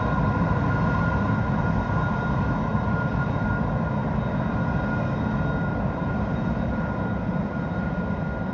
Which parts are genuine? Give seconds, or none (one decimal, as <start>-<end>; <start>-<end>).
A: 0.0-8.5